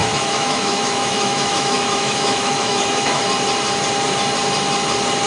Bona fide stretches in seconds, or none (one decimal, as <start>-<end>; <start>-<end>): 3.2-5.3